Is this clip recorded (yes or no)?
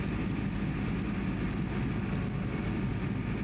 yes